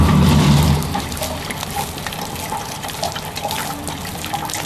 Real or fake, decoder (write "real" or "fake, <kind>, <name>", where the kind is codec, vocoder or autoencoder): real